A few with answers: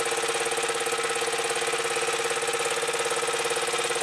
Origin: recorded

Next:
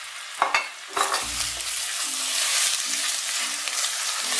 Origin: recorded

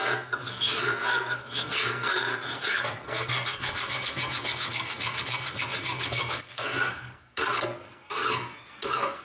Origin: remade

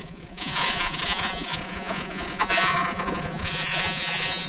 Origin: remade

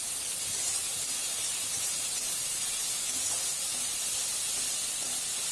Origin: recorded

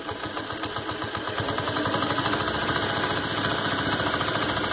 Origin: recorded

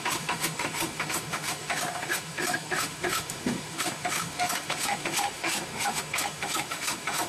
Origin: remade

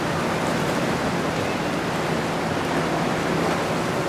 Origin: recorded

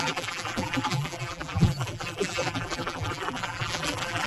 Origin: remade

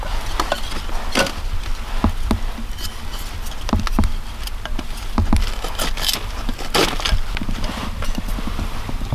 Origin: recorded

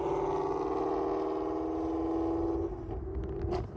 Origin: recorded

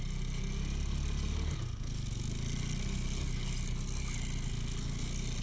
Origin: recorded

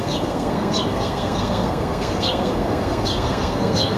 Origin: remade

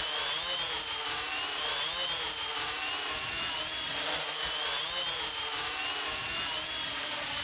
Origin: recorded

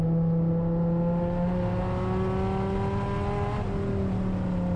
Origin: recorded